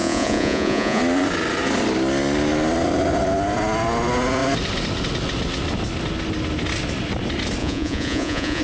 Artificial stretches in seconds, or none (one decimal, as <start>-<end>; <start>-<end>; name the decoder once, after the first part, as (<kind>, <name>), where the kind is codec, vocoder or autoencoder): 0.0-1.0 (vocoder, Vocos); 7.6-8.6